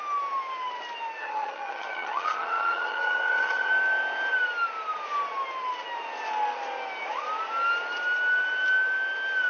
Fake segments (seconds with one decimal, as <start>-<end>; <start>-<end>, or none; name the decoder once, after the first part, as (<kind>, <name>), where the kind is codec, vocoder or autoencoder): 1.2-3.7 (vocoder, HiFi-GAN)